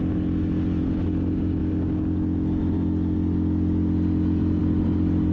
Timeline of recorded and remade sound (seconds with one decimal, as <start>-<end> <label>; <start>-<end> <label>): 0.0-5.3 recorded